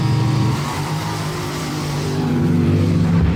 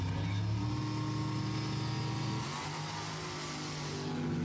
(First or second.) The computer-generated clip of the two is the first